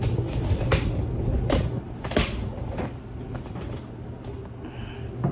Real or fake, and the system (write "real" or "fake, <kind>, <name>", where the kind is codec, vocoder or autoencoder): real